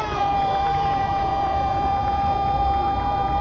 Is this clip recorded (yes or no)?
no